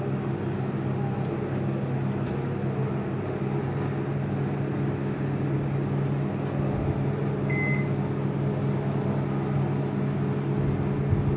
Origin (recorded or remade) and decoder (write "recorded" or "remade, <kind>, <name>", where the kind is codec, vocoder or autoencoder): recorded